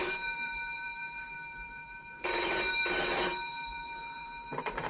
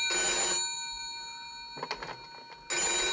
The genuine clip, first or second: second